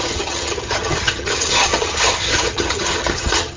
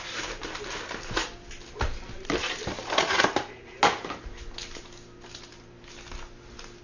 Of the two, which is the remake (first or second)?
first